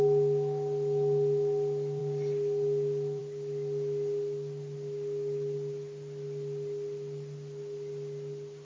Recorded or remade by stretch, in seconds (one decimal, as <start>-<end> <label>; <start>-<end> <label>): 0.0-8.6 recorded